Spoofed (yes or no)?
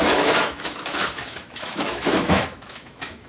yes